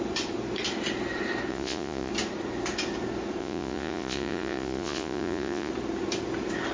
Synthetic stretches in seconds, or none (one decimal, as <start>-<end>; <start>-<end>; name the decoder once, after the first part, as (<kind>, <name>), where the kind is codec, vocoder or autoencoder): 1.5-2.1 (vocoder, Vocos); 3.4-5.7